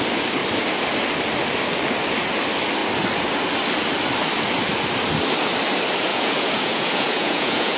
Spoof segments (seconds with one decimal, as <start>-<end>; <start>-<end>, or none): 6.1-7.8